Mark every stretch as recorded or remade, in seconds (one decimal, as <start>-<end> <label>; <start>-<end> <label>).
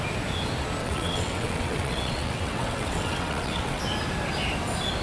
0.0-0.8 recorded; 0.8-3.8 remade; 3.8-5.0 recorded